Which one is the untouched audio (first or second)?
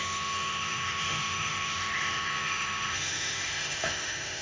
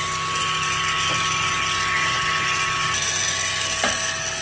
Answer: second